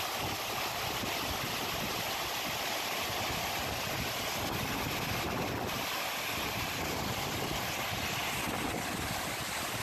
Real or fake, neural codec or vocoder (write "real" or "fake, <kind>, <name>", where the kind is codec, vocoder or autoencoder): real